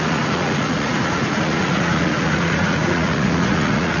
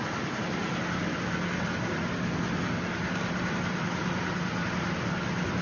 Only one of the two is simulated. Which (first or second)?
first